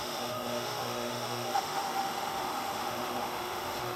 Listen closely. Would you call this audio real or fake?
fake